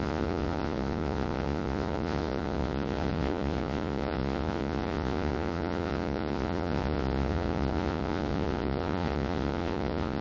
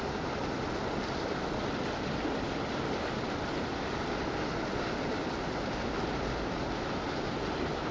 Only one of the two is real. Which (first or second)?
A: second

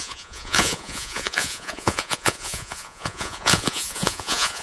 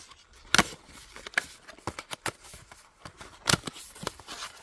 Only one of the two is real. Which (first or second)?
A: second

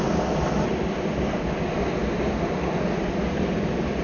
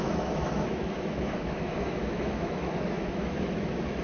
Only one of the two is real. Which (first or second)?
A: first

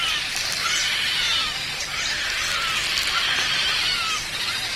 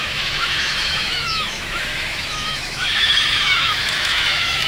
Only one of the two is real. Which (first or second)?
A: first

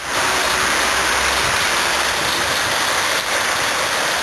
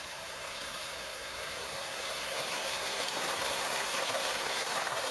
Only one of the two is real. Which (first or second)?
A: first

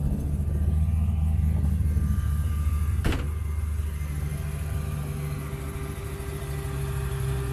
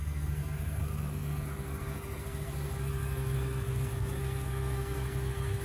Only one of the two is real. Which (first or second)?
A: first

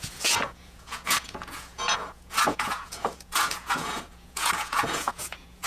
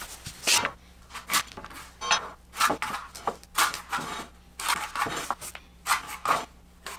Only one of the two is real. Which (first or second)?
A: second